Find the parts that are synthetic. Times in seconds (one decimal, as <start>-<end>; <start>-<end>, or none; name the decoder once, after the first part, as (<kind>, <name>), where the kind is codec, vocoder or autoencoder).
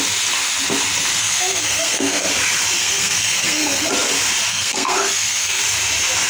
1.1-2.3 (codec, SNAC); 2.8-3.9; 4.5-5.6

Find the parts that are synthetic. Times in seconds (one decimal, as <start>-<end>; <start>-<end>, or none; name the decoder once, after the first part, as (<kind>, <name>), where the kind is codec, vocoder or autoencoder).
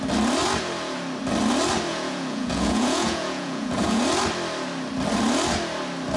1.9-4.0 (vocoder, Vocos)